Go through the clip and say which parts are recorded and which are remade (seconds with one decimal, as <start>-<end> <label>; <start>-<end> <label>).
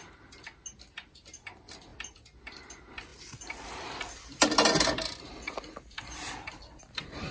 0.0-7.3 recorded